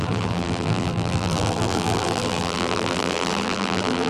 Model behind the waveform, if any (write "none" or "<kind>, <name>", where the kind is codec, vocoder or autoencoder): vocoder, BigVGAN v2